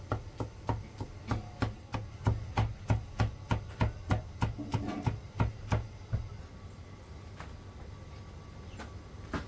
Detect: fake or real real